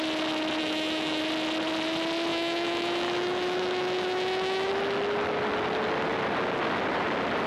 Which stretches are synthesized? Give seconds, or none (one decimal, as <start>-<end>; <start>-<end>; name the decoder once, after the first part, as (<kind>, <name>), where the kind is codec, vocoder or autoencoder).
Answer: 0.6-1.2 (autoencoder, DAC-VAE); 2.3-4.7